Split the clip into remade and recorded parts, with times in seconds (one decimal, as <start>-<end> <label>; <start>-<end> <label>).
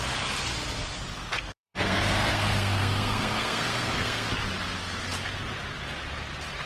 0.0-1.3 recorded; 1.3-4.3 remade; 4.3-6.7 recorded